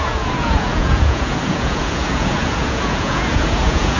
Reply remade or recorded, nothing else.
remade